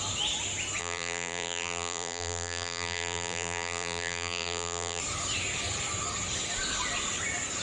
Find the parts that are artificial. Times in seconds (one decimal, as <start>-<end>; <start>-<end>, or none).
0.8-5.0